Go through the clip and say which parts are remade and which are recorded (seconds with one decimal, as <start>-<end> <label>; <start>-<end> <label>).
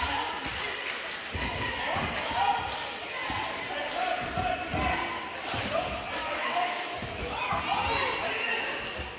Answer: 0.0-6.2 recorded; 6.2-7.6 remade; 7.6-9.2 recorded